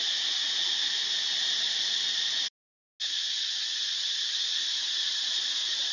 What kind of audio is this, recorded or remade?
recorded